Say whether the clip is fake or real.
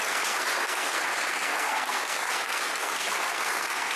fake